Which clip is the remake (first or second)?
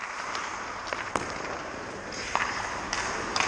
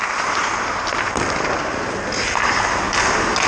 first